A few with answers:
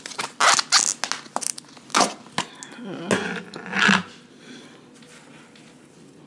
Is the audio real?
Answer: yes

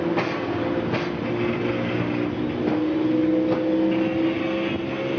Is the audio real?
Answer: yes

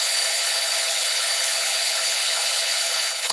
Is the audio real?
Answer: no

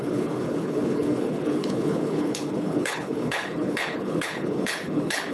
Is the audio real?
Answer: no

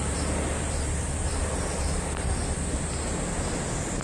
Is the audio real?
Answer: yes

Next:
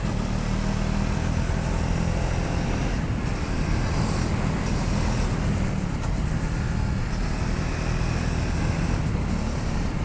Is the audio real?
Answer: yes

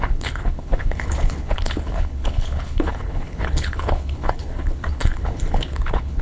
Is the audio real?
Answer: no